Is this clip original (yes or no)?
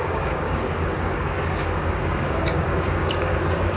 no